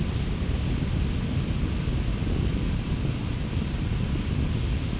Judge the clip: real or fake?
real